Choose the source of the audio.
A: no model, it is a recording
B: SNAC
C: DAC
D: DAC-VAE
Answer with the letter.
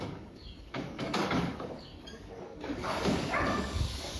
C